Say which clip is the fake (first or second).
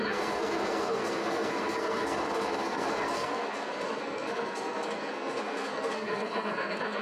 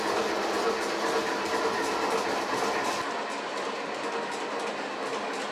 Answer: first